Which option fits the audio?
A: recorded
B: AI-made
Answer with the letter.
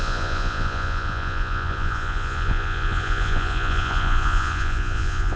B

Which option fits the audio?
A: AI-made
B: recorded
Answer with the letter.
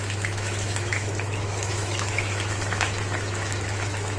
A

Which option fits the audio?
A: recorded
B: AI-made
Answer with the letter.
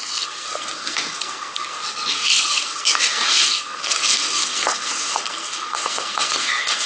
B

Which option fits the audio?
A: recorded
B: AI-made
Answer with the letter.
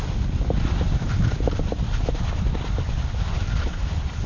A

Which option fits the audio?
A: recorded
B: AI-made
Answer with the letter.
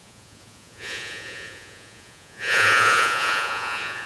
B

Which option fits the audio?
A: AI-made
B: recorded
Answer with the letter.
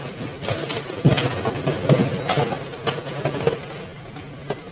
B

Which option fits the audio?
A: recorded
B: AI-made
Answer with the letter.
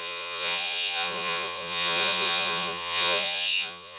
B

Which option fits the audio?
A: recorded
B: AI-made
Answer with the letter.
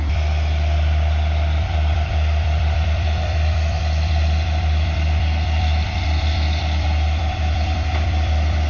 B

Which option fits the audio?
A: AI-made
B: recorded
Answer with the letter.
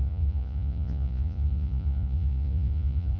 A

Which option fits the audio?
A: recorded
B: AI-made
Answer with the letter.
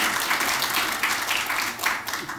A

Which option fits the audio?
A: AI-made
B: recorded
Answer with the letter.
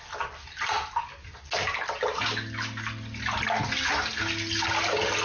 B